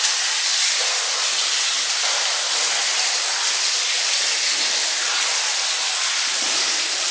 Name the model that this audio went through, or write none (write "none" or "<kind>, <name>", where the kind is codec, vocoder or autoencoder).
none